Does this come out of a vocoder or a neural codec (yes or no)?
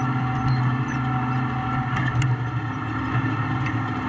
no